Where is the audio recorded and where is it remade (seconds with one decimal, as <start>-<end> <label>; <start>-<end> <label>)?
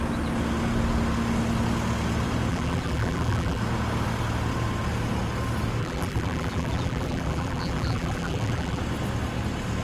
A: 0.0-2.5 recorded; 2.5-3.6 remade; 3.6-5.8 recorded; 5.8-8.8 remade; 8.8-9.8 recorded